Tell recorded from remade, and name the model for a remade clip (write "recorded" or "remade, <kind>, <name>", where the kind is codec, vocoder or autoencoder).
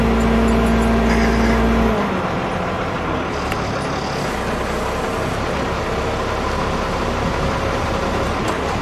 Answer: recorded